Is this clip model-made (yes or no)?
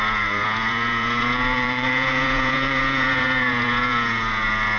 yes